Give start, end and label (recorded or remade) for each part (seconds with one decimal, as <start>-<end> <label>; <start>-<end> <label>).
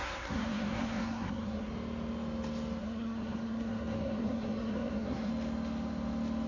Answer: 0.0-1.7 remade; 1.7-2.8 recorded; 2.8-5.3 remade; 5.3-6.5 recorded